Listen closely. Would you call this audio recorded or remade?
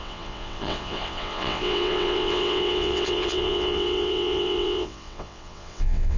remade